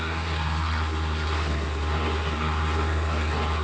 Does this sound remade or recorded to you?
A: remade